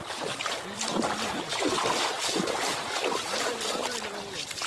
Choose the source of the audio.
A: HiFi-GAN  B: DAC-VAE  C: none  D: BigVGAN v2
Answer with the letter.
C